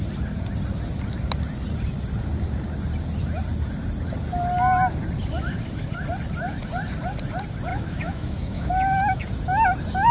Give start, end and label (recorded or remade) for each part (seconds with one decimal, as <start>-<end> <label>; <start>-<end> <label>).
0.0-7.7 recorded; 7.7-8.7 remade; 8.7-10.1 recorded